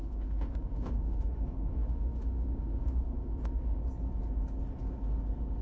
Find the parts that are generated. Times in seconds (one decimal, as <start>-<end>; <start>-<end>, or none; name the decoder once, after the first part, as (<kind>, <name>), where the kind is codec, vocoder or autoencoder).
0.0-3.8 (autoencoder, DAC-VAE)